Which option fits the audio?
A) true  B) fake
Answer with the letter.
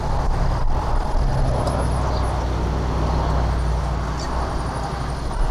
A